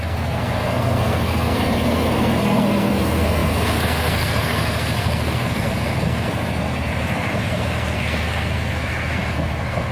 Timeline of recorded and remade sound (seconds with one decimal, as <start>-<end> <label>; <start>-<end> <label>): 0.0-9.9 remade